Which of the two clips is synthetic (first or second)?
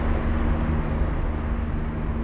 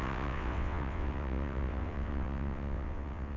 second